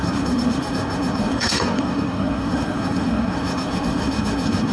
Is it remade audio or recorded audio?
remade